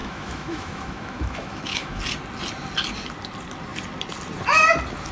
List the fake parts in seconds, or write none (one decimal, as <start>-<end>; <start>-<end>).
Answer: 0.0-2.0